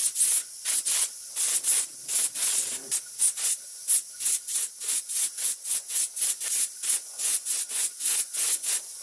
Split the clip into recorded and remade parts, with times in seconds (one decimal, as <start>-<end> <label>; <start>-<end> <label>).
0.0-5.0 recorded; 5.0-6.0 remade; 6.0-6.9 recorded; 6.9-9.0 remade